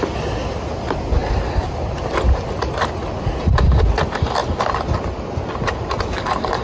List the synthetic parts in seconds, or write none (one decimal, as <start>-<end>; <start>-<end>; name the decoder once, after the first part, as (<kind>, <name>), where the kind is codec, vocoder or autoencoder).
none